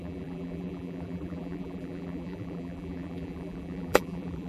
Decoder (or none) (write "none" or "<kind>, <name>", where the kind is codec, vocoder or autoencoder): vocoder, BigVGAN v2